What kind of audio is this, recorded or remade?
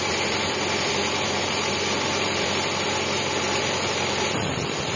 remade